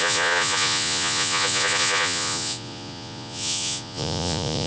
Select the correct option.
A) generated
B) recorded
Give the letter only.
A